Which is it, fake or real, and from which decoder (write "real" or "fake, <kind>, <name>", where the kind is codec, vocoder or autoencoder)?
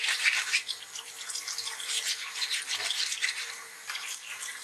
fake, vocoder, BigVGAN v2